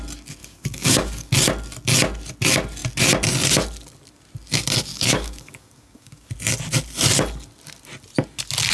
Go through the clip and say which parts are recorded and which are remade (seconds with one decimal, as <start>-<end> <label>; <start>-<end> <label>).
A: 0.0-0.4 recorded; 0.4-1.3 remade; 1.3-4.9 recorded; 4.9-6.3 remade; 6.3-8.7 recorded